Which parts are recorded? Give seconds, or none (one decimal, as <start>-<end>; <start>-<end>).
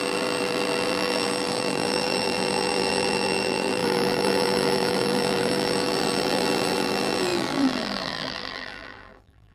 none